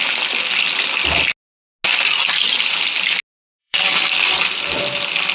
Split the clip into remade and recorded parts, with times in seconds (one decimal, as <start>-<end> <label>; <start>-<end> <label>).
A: 0.0-3.6 recorded; 3.6-4.3 remade; 4.3-5.3 recorded